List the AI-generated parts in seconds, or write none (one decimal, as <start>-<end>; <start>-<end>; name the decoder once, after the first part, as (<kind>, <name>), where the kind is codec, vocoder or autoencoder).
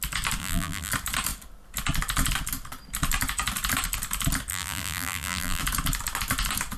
0.4-0.9 (vocoder, BigVGAN v2); 4.5-5.6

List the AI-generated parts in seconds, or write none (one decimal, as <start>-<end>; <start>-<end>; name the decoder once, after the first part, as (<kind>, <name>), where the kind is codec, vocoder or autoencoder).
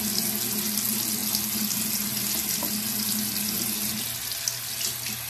none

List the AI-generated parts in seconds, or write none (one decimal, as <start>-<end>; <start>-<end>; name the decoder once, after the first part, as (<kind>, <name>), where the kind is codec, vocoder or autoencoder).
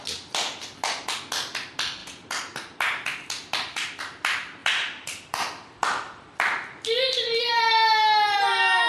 2.0-4.0 (vocoder, BigVGAN v2); 4.6-7.6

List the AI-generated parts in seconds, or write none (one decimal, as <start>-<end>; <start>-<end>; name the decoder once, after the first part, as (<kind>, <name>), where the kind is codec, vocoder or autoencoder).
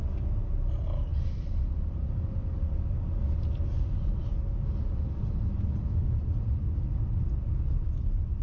1.1-3.1 (vocoder, BigVGAN v2); 3.7-4.3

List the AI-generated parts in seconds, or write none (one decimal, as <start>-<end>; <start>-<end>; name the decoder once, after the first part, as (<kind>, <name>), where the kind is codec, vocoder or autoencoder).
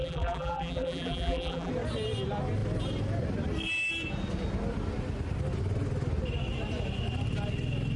0.0-1.7 (vocoder, BigVGAN v2)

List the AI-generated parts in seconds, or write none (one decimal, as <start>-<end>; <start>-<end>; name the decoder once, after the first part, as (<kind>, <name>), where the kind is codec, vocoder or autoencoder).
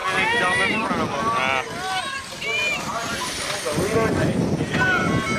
none